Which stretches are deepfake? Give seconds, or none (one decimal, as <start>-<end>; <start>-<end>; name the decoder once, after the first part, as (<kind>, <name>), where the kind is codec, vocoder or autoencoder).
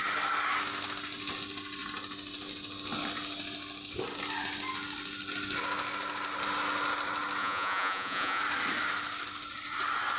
7.4-8.4 (vocoder, Vocos)